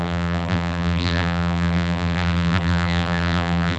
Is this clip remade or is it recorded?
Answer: remade